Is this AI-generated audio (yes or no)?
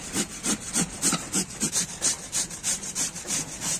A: yes